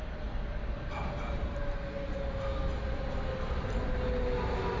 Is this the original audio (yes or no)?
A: yes